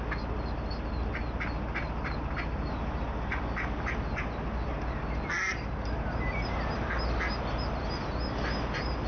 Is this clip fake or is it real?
real